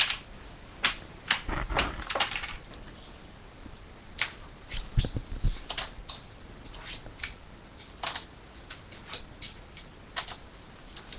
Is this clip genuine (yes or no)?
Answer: yes